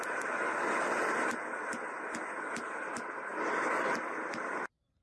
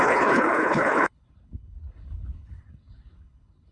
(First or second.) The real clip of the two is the first